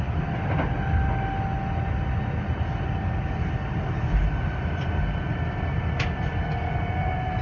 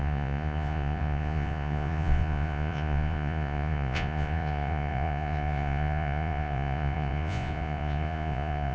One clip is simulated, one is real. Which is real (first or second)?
first